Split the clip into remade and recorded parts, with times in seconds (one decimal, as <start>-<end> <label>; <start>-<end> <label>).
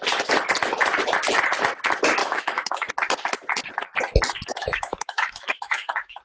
0.0-2.2 recorded; 2.2-2.9 remade; 2.9-4.5 recorded; 4.5-6.2 remade